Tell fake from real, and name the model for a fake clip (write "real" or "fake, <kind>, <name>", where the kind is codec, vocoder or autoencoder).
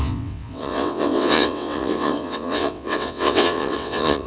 fake, vocoder, WaveNeXt